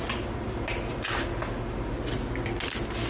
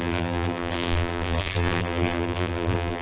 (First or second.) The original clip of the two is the first